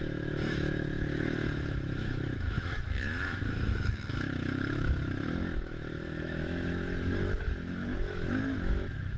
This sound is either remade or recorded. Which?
remade